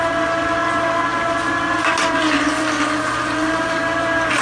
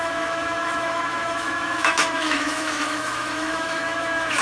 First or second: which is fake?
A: second